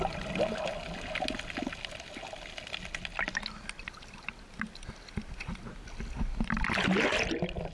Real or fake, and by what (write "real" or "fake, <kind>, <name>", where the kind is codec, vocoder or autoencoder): real